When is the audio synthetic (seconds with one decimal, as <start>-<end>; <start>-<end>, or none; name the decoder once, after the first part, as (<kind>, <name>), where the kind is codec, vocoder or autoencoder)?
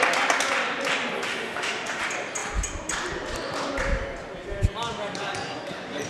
1.3-2.0 (autoencoder, DAC-VAE)